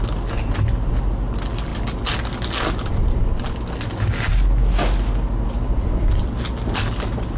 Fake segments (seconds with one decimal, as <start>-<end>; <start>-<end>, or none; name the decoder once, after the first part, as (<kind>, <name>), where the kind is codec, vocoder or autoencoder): none